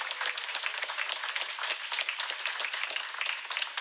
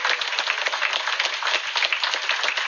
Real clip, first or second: second